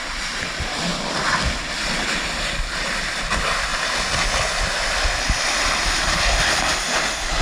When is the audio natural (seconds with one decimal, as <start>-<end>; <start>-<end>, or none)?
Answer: 0.0-0.9; 1.4-7.4

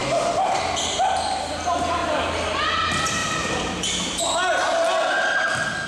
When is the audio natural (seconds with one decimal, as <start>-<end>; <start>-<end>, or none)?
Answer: 0.8-3.2; 4.2-5.9